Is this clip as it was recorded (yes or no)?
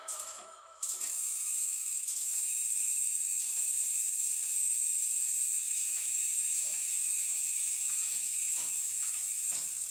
no